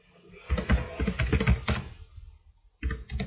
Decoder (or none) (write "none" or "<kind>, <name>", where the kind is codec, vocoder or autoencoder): none